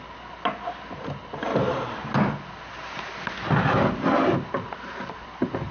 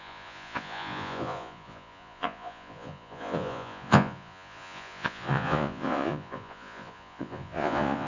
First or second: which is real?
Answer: first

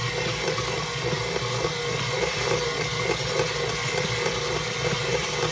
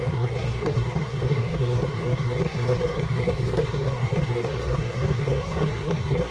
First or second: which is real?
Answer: first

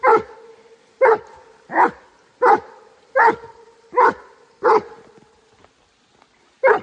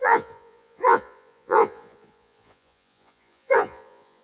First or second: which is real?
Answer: first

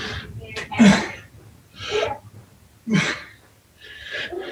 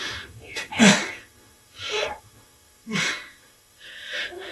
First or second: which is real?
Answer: first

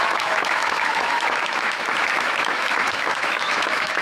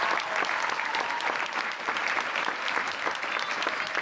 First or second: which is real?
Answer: second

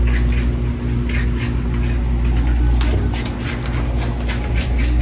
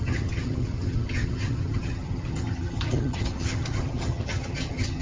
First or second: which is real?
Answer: first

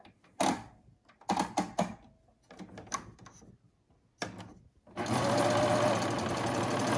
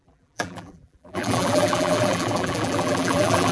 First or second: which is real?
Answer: first